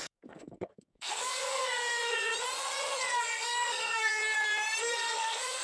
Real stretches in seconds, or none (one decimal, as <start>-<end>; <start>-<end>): 2.3-3.0; 4.2-4.8